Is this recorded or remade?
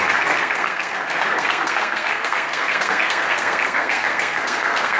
remade